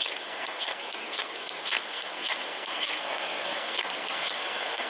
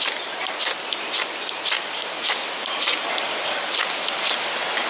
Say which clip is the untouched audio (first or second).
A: second